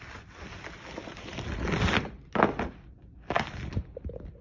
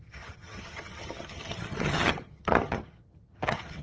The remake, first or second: second